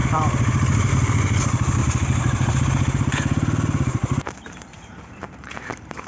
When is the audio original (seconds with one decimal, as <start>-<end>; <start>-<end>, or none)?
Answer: 0.9-1.8; 5.5-6.1